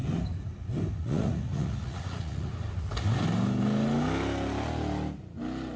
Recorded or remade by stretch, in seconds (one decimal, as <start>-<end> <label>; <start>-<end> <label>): 0.0-1.0 recorded; 1.0-2.5 remade; 2.5-5.8 recorded